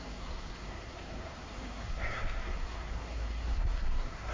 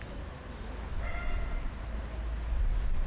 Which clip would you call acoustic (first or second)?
second